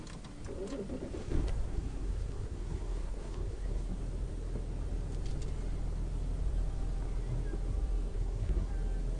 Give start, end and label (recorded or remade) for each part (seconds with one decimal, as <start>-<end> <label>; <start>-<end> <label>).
0.0-1.2 recorded; 1.2-4.0 remade; 4.0-8.1 recorded; 8.1-8.7 remade; 8.7-9.2 recorded